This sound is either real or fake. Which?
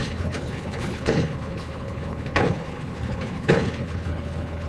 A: fake